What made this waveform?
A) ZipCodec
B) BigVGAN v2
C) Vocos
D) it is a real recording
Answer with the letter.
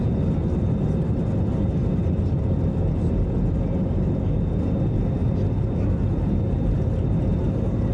D